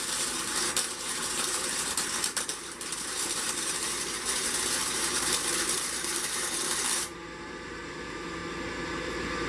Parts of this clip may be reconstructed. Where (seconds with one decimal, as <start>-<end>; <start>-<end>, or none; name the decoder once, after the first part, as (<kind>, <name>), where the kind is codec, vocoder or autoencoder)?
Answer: 0.0-8.4 (vocoder, BigVGAN v2)